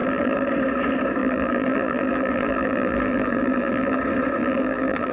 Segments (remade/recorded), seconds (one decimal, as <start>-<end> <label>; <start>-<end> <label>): 0.0-0.5 remade; 0.5-1.2 recorded; 1.2-4.0 remade; 4.0-4.4 recorded; 4.4-5.1 remade